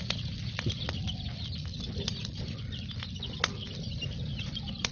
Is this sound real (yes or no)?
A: yes